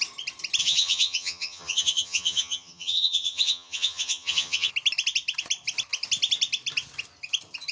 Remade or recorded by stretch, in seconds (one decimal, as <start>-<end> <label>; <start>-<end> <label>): 0.0-0.6 recorded; 0.6-4.7 remade; 4.7-7.7 recorded